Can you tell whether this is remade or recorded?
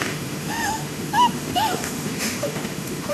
remade